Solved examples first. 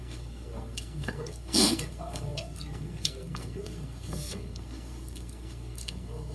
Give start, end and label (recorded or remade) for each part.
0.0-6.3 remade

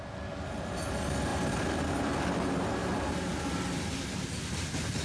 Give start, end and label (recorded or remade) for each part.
0.0-5.0 recorded

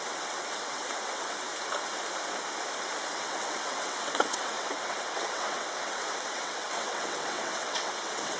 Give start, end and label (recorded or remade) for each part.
0.0-1.5 remade; 1.5-3.1 recorded; 3.1-8.4 remade

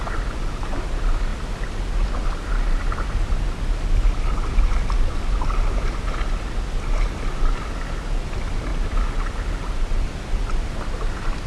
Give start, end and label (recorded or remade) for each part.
0.0-8.7 recorded; 8.7-9.3 remade; 9.3-11.5 recorded

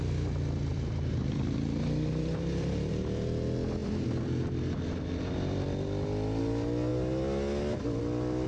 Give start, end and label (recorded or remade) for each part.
0.0-0.7 recorded; 0.7-2.9 remade; 2.9-3.8 recorded; 3.8-6.4 remade; 6.4-8.5 recorded

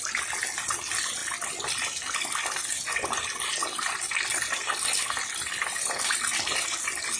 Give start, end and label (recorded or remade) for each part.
0.0-7.2 recorded